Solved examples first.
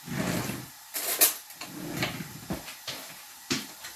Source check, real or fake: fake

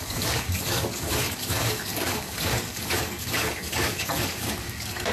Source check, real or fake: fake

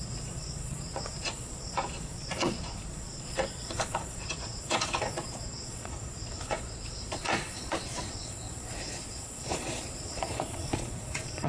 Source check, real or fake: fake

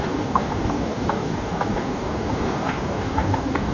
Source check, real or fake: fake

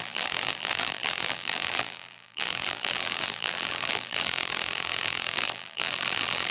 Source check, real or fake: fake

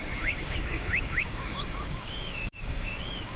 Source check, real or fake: fake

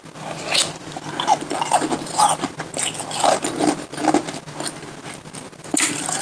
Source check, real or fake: real